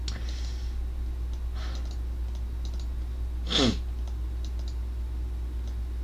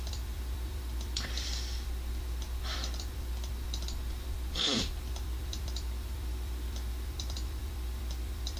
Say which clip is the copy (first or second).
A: second